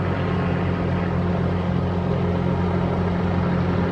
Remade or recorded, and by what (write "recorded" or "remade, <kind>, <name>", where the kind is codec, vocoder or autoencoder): recorded